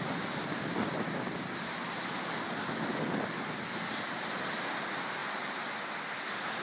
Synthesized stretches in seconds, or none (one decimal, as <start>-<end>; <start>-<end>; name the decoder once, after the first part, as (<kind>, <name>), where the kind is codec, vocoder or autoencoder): none